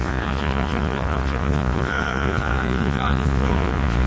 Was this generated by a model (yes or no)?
yes